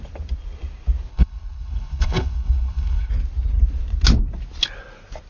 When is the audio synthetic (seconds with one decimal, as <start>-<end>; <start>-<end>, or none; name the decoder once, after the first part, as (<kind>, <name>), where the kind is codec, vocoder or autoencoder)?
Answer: 1.1-3.1 (codec, HILCodec)